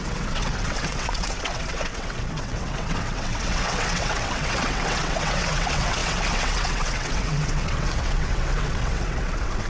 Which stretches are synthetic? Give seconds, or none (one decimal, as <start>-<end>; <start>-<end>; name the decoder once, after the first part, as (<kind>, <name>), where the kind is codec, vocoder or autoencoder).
0.0-9.7 (vocoder, WaveNeXt)